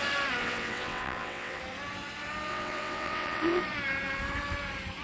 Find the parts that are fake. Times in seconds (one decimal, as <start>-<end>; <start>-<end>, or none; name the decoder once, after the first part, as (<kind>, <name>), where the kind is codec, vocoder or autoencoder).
0.4-1.6 (vocoder, WaveNeXt); 2.5-3.6